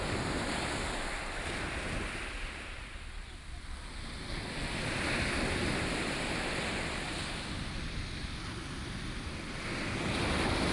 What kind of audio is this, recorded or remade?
recorded